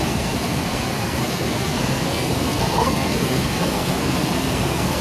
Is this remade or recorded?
remade